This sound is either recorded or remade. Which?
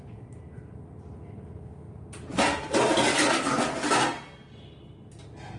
recorded